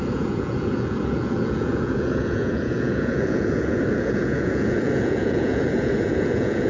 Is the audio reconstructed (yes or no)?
yes